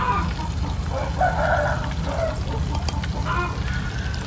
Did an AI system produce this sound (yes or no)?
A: no